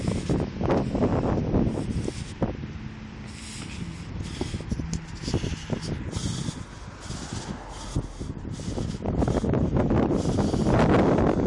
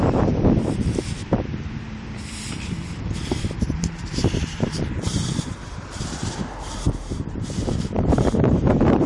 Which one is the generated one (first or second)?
second